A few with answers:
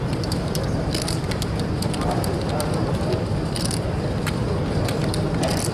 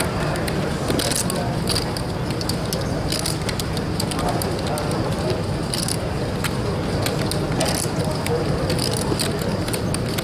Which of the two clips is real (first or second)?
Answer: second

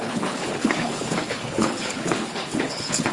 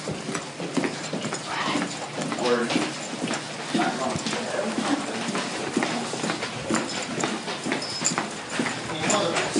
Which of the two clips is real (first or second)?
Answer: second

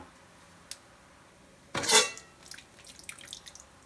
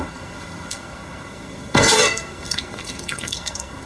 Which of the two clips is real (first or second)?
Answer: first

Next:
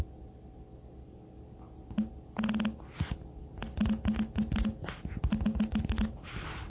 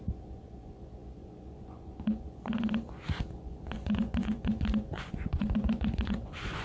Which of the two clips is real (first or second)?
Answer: first